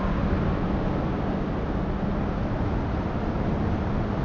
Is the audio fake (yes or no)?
no